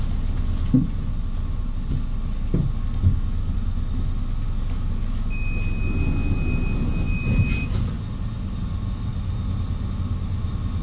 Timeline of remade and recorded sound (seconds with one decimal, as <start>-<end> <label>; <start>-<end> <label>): 0.0-10.8 recorded